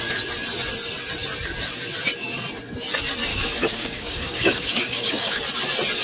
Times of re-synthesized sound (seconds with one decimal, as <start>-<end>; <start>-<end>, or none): 3.3-5.4